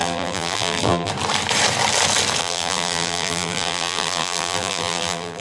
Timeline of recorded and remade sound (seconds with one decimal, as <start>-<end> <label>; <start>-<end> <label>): 0.0-1.1 remade; 1.1-2.4 recorded; 2.4-5.4 remade

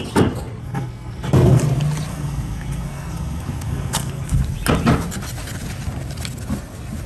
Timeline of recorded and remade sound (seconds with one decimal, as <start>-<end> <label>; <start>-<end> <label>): 0.0-0.6 recorded; 0.6-1.6 remade; 1.6-2.1 recorded; 2.1-4.4 remade; 4.4-7.1 recorded